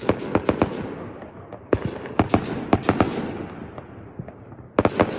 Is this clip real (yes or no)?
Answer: yes